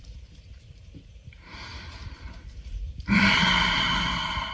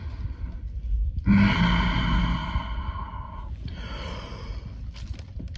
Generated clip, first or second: first